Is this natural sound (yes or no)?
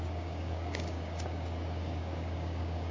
no